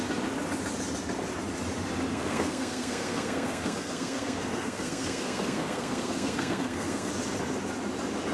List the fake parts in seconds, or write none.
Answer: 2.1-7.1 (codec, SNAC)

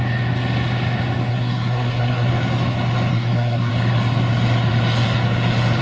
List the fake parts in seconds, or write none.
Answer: 1.3-2.3 (codec, SNAC); 3.1-3.7

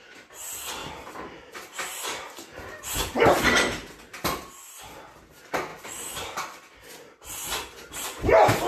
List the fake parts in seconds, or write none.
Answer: 0.8-3.4 (vocoder, BigVGAN v2); 5.7-7.3

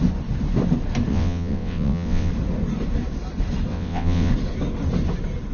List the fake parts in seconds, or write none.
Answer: 1.1-2.3 (vocoder, WaveNeXt); 3.7-4.3

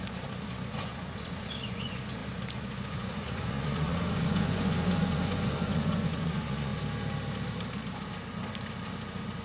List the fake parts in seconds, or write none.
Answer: 0.0-6.7 (vocoder, Vocos)